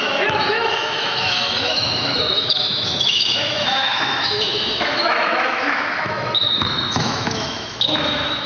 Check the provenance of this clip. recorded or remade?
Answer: remade